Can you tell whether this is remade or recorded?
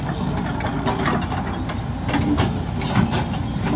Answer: recorded